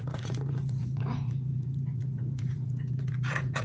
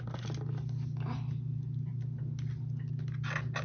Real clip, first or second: second